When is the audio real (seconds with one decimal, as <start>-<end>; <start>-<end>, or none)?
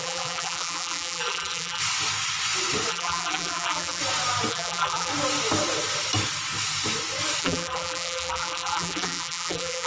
1.8-2.9; 4.0-4.5; 5.1-7.4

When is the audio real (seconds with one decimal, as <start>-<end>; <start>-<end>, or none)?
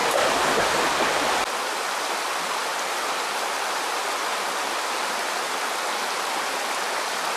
0.8-2.7; 6.1-7.4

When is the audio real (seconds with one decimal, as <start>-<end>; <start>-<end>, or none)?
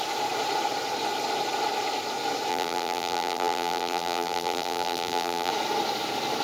0.0-2.5; 5.5-6.4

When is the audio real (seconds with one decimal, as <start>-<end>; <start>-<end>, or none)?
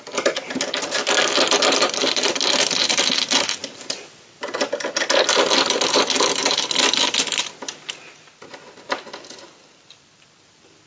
0.0-2.0; 3.2-3.6; 4.6-6.4; 7.2-10.9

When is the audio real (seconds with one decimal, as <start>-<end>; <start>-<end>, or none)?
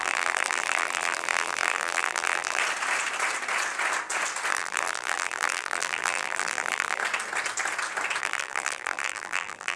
2.6-4.5; 7.0-8.2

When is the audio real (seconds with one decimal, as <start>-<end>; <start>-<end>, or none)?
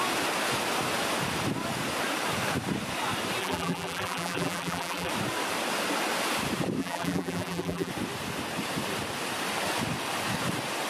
0.0-3.4; 5.1-6.8; 7.9-10.9